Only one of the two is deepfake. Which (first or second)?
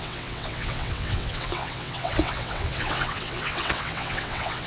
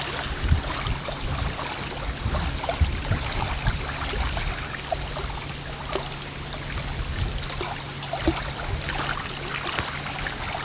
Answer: first